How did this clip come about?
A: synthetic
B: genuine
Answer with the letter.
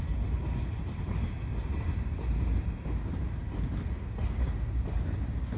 B